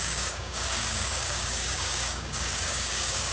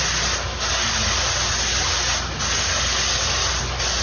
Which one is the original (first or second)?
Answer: second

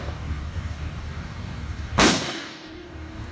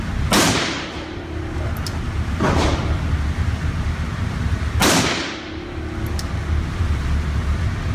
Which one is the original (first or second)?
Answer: second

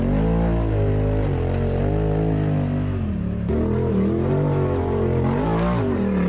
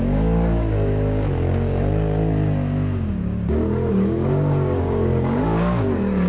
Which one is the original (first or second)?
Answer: first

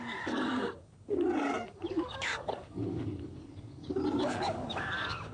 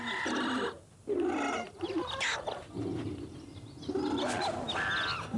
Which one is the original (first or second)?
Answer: second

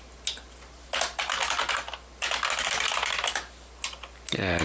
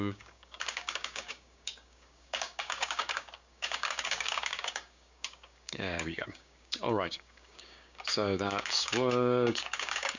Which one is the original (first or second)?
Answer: first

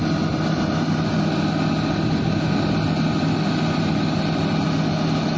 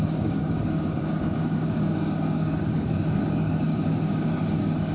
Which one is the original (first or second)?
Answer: first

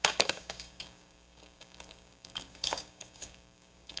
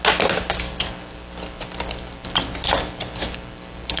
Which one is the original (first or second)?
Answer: second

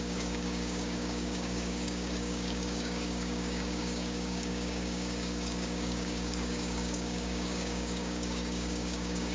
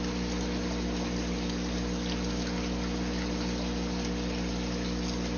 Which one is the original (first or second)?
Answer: second